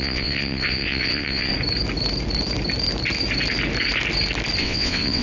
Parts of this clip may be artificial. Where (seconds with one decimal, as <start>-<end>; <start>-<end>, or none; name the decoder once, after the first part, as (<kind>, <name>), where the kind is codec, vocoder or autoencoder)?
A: 0.0-1.5 (vocoder, WaveNeXt); 4.6-5.2